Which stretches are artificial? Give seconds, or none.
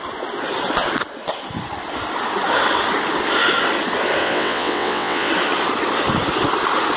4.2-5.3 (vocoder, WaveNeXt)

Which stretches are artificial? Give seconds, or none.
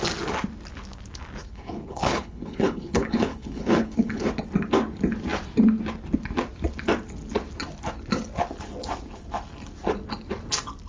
1.4-4.3 (codec, HILCodec)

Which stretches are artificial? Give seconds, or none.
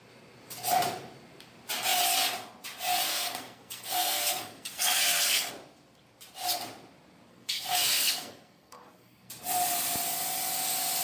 3.1-5.5 (codec, SNAC); 7.3-9.3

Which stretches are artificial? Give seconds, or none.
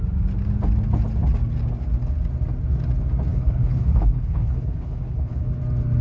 3.3-5.6 (codec, HILCodec)